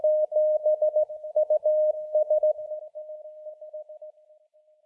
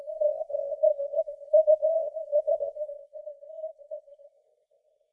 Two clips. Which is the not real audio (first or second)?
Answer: second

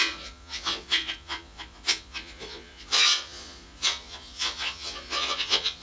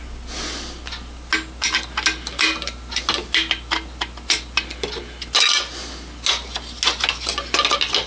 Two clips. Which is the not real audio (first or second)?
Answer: first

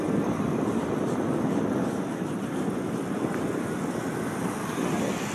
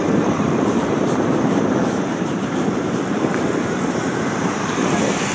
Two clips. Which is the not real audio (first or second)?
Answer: second